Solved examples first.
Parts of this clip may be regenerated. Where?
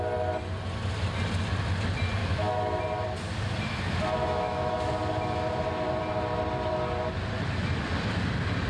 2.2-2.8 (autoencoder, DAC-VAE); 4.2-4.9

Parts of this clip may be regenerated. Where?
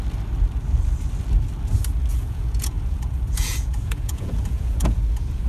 2.1-5.5 (vocoder, Vocos)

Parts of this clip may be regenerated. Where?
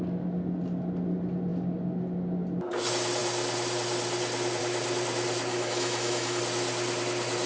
5.5-6.4 (autoencoder, DAC-VAE)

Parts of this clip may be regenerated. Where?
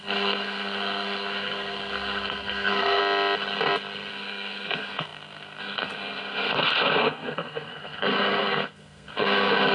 0.0-3.0 (codec, SNAC); 4.1-9.7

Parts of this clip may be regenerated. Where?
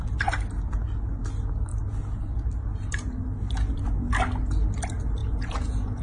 5.2-6.0 (vocoder, Vocos)